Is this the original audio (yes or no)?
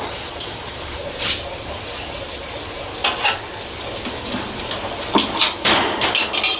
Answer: yes